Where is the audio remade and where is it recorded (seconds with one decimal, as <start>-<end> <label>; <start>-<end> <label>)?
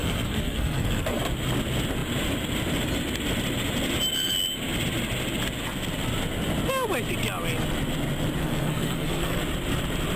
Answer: 0.0-1.2 remade; 1.2-8.4 recorded; 8.4-9.4 remade; 9.4-10.2 recorded